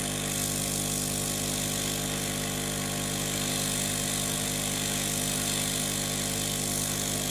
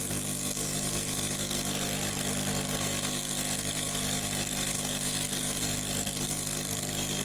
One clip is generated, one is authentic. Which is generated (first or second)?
second